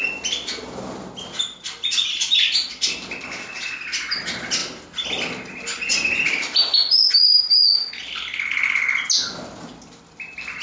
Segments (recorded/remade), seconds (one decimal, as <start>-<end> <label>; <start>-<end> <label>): 0.0-10.6 recorded